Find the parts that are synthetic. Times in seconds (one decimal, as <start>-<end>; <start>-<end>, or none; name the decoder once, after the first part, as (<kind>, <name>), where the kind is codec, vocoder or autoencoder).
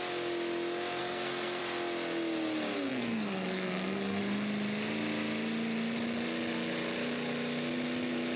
1.0-1.6 (codec, SNAC); 2.9-4.2